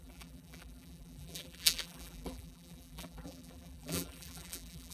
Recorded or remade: remade